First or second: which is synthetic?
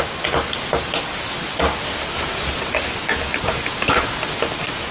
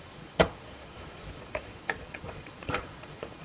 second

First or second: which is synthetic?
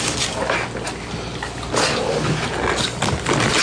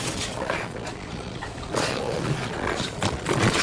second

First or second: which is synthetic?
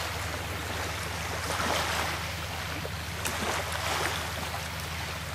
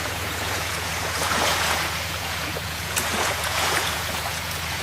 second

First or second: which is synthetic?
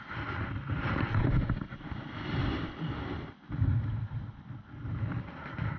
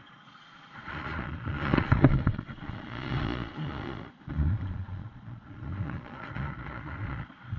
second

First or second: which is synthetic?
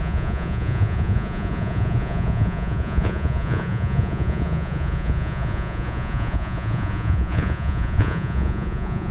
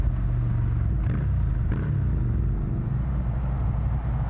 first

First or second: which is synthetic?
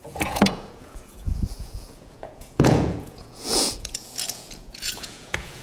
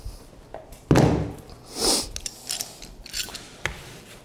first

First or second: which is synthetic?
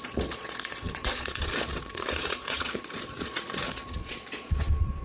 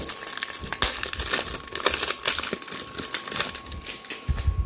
first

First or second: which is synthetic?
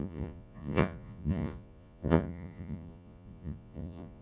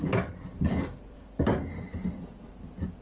first